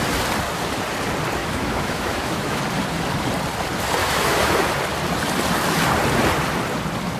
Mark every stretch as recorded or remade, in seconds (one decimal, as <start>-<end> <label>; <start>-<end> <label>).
0.0-1.4 recorded; 1.4-2.6 remade; 2.6-4.0 recorded; 4.0-4.7 remade; 4.7-7.2 recorded